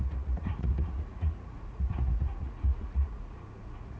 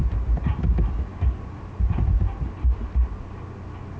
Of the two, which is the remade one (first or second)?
first